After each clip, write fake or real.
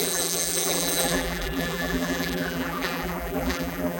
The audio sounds fake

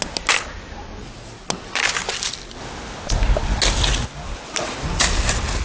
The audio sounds real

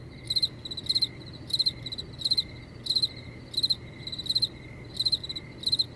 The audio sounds real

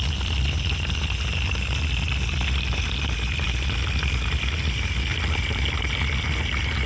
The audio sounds real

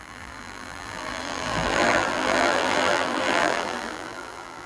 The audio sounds fake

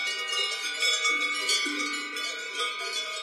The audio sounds real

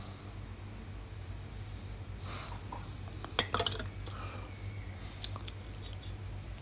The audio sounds real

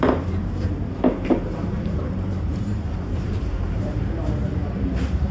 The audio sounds fake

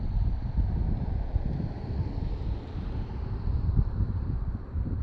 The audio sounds fake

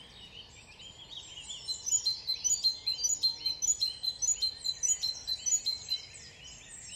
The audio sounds real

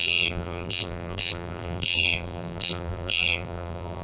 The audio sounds fake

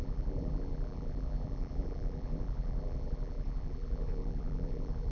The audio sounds fake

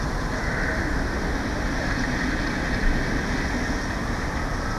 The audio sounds real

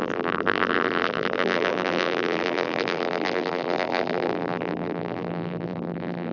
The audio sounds fake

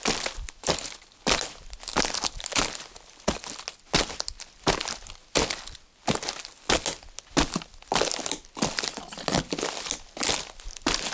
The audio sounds real